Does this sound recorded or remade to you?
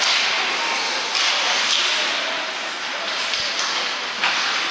recorded